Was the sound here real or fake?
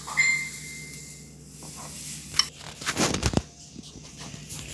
real